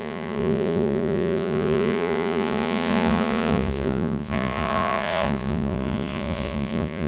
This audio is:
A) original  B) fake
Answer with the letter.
B